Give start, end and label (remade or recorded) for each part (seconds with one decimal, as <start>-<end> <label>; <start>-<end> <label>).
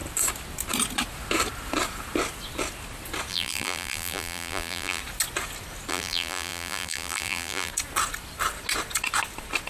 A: 0.0-3.3 recorded; 3.3-5.0 remade; 5.0-5.9 recorded; 5.9-7.7 remade; 7.7-9.7 recorded